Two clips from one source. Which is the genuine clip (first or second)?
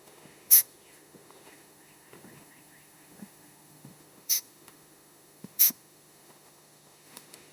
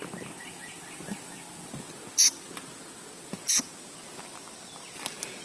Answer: second